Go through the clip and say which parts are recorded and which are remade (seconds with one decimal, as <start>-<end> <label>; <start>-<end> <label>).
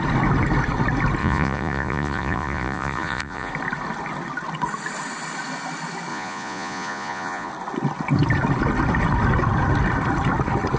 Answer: 0.0-1.2 recorded; 1.2-3.5 remade; 3.5-6.1 recorded; 6.1-7.5 remade; 7.5-10.8 recorded